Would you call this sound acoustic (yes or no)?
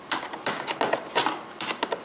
yes